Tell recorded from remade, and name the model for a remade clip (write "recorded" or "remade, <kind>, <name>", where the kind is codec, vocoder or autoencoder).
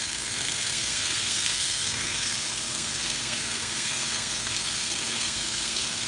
remade, codec, SNAC